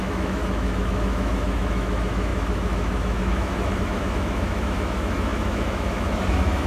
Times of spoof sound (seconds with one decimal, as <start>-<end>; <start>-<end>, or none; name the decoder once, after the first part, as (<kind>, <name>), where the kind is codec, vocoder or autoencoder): 0.0-6.7 (autoencoder, DAC-VAE)